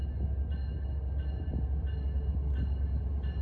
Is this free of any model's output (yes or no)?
yes